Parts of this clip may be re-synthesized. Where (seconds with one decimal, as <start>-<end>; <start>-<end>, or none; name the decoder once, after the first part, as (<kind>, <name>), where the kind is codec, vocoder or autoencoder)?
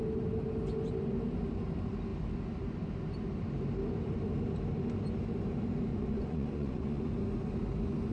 5.9-7.1 (vocoder, Vocos)